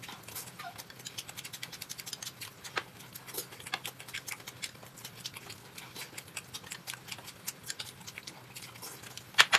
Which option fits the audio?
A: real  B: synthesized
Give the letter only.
A